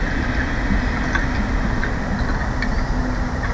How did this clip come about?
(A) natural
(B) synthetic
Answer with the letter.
A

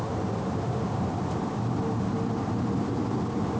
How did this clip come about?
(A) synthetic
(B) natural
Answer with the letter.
B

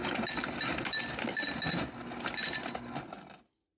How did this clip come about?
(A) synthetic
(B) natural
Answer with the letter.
B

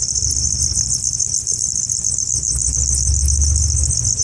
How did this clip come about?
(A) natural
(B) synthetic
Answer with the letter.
A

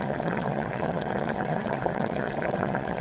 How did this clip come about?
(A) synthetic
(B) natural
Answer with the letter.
A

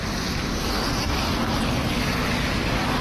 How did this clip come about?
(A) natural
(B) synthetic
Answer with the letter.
A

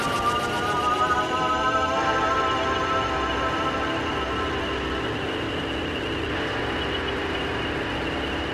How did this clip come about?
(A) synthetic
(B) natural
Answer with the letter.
B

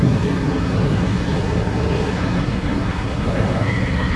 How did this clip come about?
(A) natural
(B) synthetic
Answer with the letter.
B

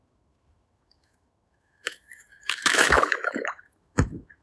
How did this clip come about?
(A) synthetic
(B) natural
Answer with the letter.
A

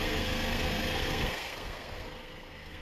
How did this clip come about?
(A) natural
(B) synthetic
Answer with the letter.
B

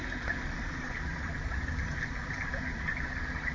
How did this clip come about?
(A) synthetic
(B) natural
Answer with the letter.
B